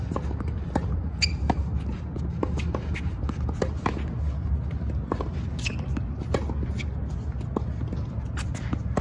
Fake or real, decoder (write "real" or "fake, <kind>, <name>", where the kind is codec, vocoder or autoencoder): real